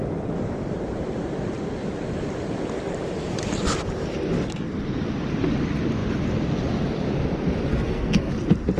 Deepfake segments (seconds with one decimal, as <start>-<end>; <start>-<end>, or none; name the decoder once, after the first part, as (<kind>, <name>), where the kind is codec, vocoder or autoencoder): 7.7-8.3 (codec, SNAC)